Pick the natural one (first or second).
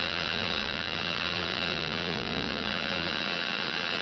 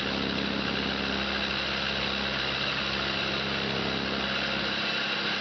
second